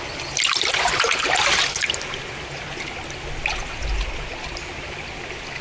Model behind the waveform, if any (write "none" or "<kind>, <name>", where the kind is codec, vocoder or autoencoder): none